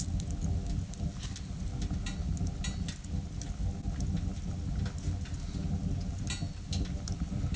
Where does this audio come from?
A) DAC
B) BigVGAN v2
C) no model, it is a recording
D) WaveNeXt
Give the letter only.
C